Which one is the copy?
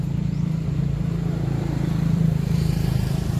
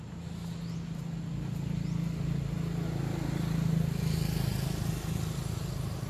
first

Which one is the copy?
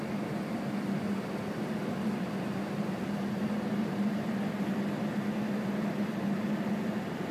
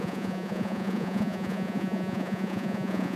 second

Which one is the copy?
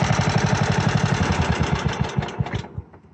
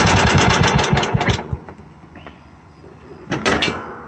second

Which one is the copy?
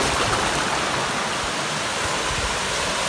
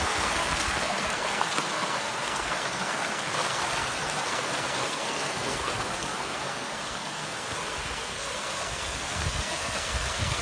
second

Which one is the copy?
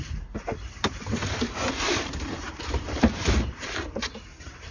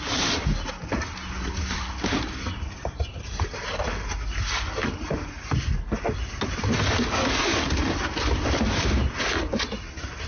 first